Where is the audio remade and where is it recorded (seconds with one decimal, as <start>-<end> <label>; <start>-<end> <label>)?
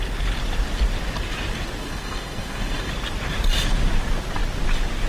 0.0-1.8 recorded; 1.8-2.9 remade; 2.9-5.1 recorded